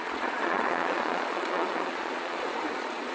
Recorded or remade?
remade